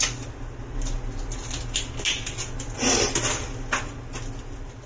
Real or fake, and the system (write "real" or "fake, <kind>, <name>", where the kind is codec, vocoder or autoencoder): real